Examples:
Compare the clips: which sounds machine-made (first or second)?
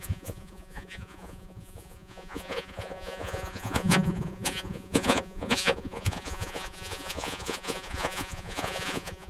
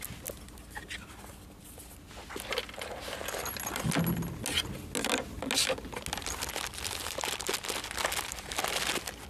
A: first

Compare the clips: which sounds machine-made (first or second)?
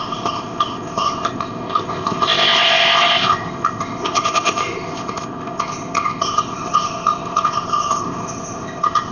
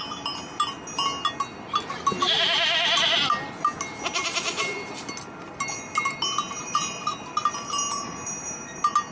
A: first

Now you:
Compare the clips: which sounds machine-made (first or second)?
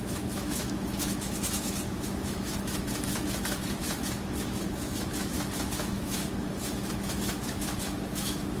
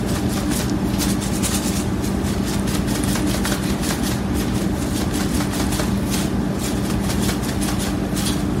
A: first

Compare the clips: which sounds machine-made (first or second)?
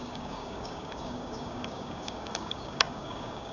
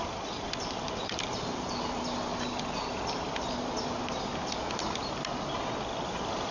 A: first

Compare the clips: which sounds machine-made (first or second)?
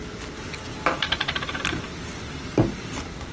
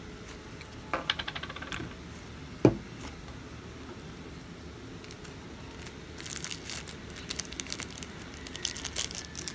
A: first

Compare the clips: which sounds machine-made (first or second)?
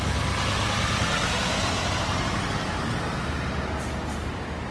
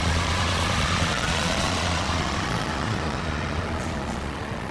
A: second